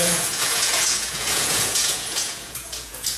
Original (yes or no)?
no